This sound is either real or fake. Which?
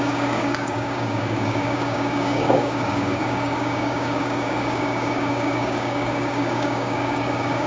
fake